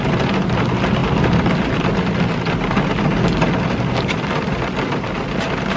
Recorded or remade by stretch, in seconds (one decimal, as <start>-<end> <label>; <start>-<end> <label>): 0.0-5.8 recorded